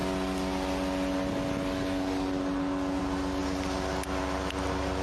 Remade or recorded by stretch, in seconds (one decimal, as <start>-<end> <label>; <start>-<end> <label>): 0.0-5.0 recorded